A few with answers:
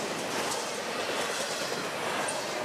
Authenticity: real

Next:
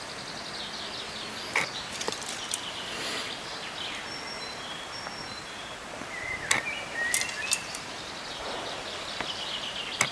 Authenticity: real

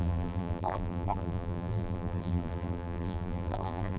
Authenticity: fake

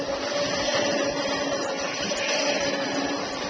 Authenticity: real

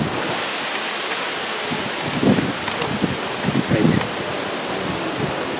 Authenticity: real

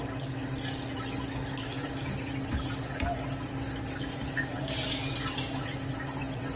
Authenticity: real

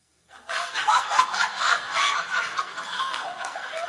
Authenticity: fake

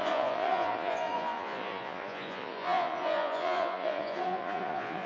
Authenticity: fake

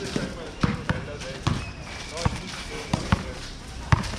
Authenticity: fake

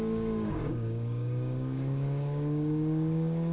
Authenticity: fake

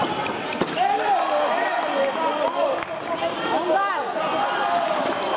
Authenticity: real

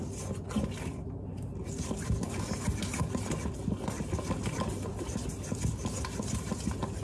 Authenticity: real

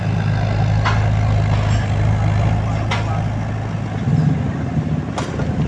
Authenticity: real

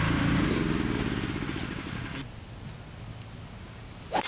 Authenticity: real